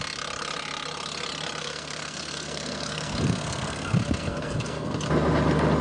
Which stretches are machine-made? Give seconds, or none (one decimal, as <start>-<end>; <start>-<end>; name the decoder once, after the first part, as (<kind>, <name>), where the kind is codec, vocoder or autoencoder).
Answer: 1.6-5.1 (codec, SNAC)